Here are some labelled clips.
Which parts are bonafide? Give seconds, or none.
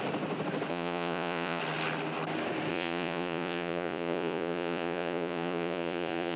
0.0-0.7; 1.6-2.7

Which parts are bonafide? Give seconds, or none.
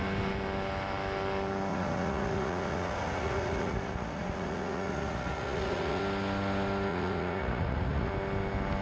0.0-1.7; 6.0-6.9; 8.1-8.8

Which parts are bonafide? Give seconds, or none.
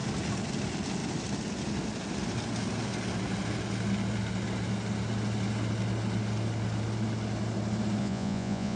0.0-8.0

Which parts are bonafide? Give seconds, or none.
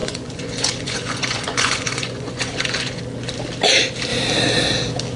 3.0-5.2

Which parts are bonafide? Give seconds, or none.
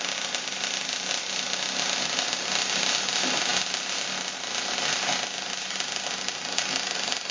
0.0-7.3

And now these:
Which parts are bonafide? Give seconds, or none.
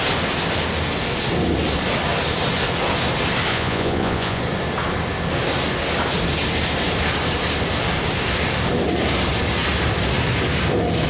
0.0-3.5; 4.4-11.1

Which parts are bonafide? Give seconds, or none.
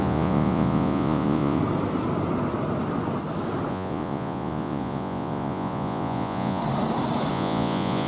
1.6-3.7; 6.6-7.3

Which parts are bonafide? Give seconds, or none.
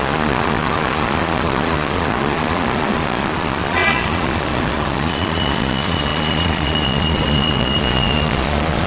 none